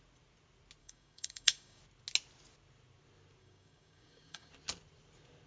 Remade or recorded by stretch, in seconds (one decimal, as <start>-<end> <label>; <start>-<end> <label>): 0.0-0.8 recorded; 0.8-1.8 remade; 1.8-3.4 recorded; 3.4-4.5 remade; 4.5-5.5 recorded